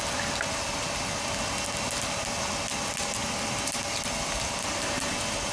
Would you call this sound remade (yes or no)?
no